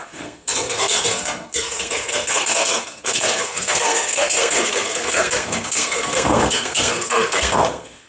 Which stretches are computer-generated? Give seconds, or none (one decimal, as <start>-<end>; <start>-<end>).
0.0-8.1